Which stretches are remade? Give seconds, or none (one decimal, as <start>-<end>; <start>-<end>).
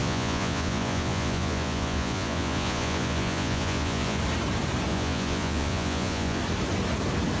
0.0-4.2; 4.9-6.4